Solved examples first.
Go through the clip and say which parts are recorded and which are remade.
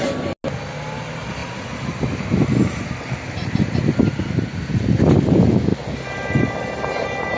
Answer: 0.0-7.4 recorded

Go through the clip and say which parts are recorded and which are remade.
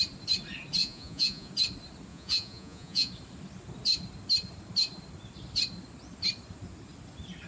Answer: 0.0-0.8 recorded; 0.8-1.5 remade; 1.5-2.1 recorded; 2.1-3.1 remade; 3.1-7.5 recorded